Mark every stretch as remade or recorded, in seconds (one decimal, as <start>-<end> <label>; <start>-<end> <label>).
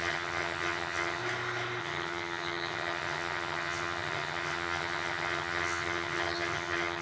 0.0-1.2 remade; 1.2-1.8 recorded; 1.8-7.0 remade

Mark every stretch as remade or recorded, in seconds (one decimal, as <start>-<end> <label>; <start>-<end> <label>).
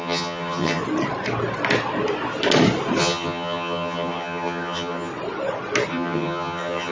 0.0-0.8 remade; 0.8-3.0 recorded; 3.0-5.1 remade; 5.1-5.9 recorded; 5.9-6.9 remade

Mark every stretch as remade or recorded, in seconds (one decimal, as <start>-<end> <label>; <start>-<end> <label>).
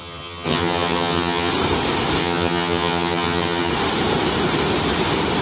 0.0-1.5 remade; 1.5-2.2 recorded; 2.2-3.7 remade; 3.7-5.4 recorded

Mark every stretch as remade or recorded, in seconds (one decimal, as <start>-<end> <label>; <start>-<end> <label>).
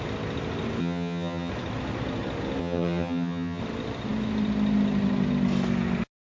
0.0-0.8 recorded; 0.8-1.5 remade; 1.5-2.6 recorded; 2.6-3.6 remade; 3.6-6.3 recorded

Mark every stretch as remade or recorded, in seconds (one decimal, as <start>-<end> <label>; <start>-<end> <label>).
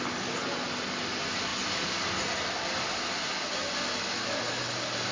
0.0-5.1 recorded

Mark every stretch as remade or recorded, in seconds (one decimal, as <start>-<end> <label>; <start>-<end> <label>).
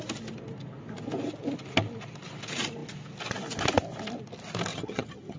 0.0-4.7 recorded; 4.7-5.4 remade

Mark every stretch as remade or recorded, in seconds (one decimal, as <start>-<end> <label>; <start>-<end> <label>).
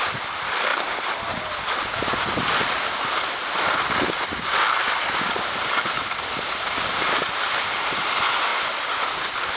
0.0-9.6 recorded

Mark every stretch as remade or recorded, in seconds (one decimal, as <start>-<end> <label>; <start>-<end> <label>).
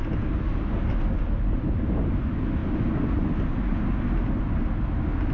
0.0-5.3 recorded